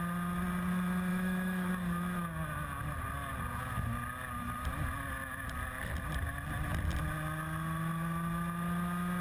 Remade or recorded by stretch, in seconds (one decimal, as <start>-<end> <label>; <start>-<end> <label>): 0.0-1.1 recorded; 1.1-1.7 remade; 1.7-9.2 recorded